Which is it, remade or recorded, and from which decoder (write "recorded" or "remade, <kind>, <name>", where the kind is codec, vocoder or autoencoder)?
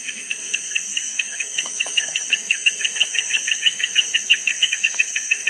remade, codec, SNAC